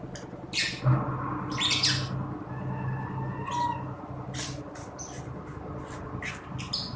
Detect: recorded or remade recorded